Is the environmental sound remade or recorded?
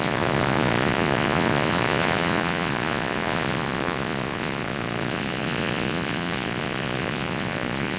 remade